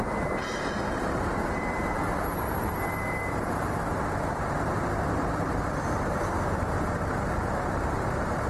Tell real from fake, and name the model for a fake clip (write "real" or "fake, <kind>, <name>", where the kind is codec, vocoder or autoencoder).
fake, vocoder, BigVGAN v2